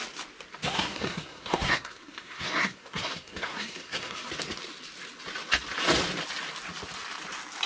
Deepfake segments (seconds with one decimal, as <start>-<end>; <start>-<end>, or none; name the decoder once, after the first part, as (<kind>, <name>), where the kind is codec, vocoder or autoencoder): 0.6-4.3 (codec, SNAC)